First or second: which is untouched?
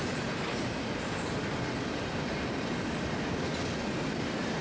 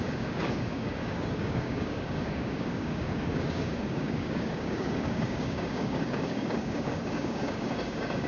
first